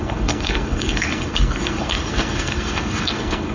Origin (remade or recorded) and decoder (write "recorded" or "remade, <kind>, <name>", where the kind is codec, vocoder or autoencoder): remade, codec, SNAC